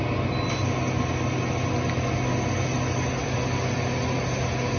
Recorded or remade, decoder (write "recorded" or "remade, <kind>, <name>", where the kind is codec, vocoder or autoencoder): recorded